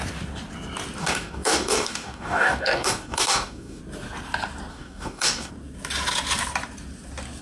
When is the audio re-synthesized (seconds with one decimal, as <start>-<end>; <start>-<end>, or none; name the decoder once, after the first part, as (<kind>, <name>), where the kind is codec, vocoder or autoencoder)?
1.0-3.8 (codec, DAC); 4.7-5.5